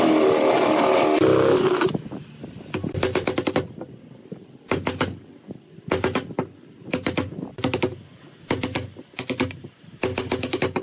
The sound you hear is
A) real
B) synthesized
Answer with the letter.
A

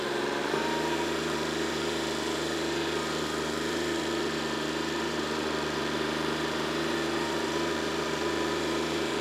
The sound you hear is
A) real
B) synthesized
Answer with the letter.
B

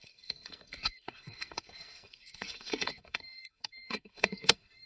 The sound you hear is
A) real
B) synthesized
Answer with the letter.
B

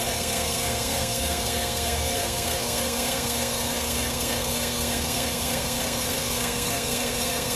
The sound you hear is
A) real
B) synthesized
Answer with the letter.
B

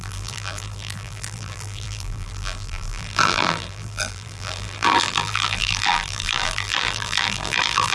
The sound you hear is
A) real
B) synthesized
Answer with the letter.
B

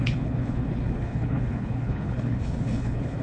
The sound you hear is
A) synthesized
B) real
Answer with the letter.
A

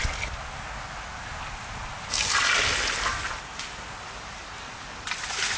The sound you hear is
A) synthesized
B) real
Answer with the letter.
B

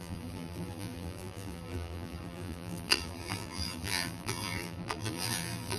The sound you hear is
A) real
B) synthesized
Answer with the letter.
B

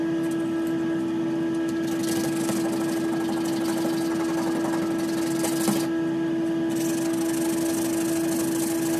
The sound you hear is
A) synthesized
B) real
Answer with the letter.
B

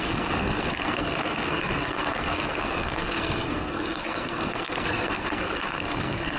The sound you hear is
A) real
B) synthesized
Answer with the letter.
B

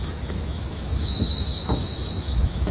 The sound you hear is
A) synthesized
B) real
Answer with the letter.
A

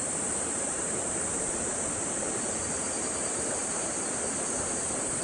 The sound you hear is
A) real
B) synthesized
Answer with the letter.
B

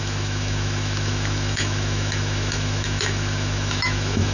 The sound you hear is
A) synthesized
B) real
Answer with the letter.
A